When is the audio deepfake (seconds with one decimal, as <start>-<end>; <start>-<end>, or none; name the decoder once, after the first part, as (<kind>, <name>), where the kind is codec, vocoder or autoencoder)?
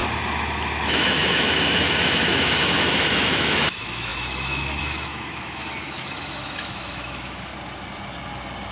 0.9-7.5 (autoencoder, DAC-VAE)